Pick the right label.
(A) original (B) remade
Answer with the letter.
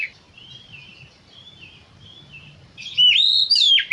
B